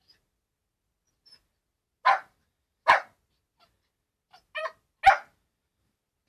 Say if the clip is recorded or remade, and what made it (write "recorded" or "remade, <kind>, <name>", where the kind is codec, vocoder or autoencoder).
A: recorded